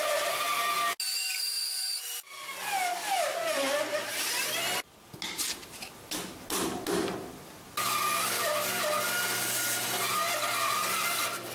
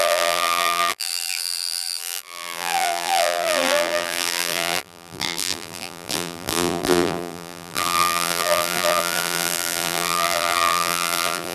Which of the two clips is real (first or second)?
first